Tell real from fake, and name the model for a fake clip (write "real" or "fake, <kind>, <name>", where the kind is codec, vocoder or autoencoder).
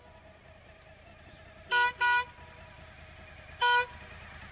real